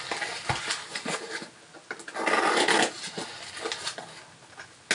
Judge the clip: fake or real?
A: real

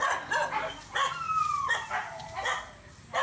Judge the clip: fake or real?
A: real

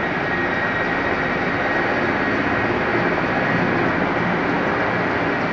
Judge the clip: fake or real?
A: real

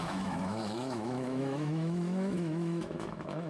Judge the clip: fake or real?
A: fake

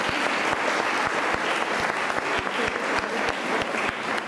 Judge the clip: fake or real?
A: real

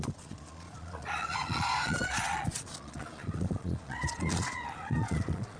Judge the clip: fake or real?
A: fake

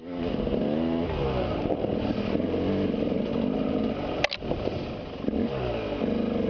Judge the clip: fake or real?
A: real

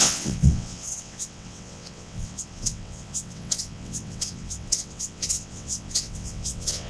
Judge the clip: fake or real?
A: fake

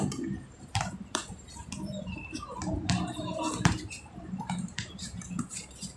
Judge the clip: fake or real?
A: fake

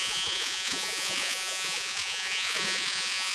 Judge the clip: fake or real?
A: fake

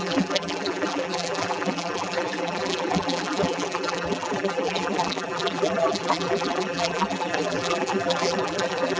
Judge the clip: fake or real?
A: fake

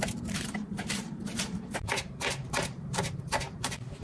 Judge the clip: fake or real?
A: fake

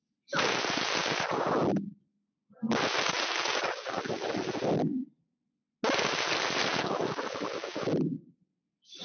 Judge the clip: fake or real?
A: real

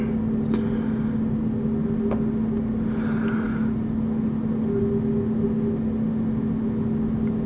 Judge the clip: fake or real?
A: real